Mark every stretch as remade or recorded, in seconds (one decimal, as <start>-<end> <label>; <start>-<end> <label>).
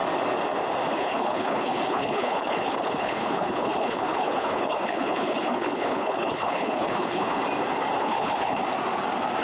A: 0.0-0.9 recorded; 0.9-7.4 remade; 7.4-8.0 recorded; 8.0-8.6 remade; 8.6-9.4 recorded